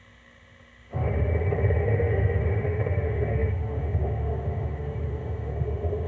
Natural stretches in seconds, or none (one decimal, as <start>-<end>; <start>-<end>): 1.3-1.8